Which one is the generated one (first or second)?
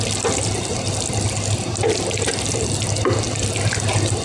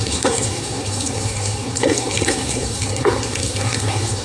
second